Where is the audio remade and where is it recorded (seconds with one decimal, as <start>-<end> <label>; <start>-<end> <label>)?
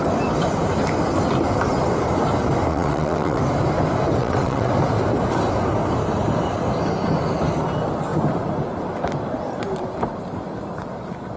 0.0-2.7 recorded; 2.7-3.4 remade; 3.4-4.2 recorded; 4.2-4.7 remade; 4.7-11.4 recorded